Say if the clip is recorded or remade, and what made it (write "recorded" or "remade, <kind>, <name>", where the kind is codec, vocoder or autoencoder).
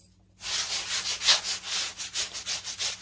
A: recorded